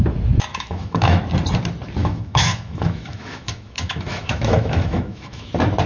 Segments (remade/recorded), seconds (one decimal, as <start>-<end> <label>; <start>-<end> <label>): 0.0-0.5 recorded; 0.5-1.2 remade; 1.2-2.0 recorded; 2.0-5.5 remade; 5.5-5.9 recorded